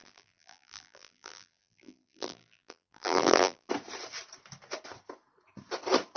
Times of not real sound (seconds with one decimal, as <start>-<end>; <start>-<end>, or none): 0.0-3.7